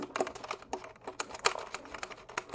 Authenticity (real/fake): real